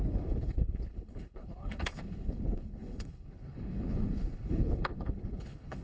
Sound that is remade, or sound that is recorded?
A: remade